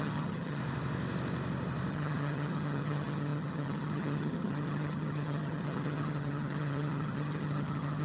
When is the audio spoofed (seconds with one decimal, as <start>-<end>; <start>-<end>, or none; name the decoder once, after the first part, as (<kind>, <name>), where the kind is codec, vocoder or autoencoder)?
0.0-0.6 (vocoder, HiFi-GAN); 1.9-8.0